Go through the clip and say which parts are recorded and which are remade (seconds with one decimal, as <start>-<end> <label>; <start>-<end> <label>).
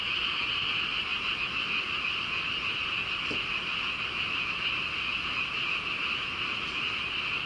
0.0-7.5 recorded